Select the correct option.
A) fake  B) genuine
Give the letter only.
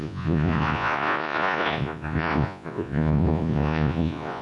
A